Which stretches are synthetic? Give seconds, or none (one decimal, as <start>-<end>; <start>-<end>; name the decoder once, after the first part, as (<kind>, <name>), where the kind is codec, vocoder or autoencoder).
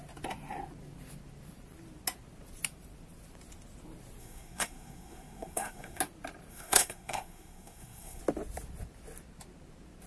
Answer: 4.2-6.0 (codec, SNAC); 6.5-8.2